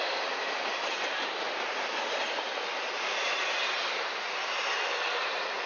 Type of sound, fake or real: real